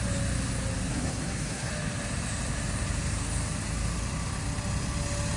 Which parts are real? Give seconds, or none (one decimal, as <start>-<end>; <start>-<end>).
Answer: 0.0-0.9; 1.7-5.4